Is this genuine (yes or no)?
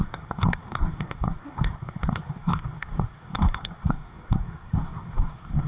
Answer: no